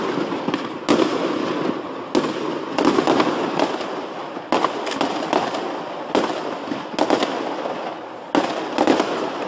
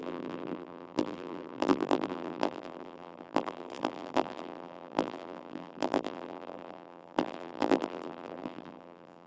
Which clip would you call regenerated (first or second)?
second